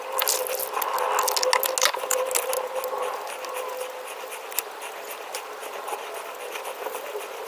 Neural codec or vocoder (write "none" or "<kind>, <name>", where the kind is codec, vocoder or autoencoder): none